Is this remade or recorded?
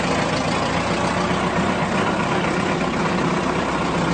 recorded